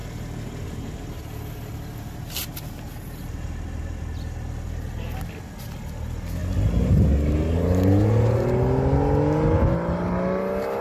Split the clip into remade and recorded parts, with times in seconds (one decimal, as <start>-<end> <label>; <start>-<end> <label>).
0.0-10.8 recorded